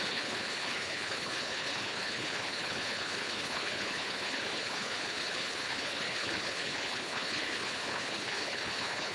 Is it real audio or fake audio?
fake